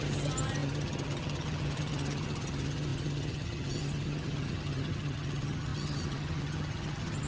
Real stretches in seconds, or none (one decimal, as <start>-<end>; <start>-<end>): none